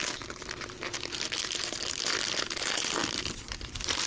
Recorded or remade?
recorded